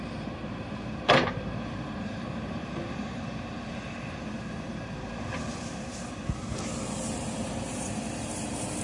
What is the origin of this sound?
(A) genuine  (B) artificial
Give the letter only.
B